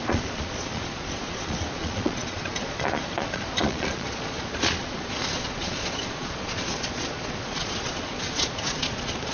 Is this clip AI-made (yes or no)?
yes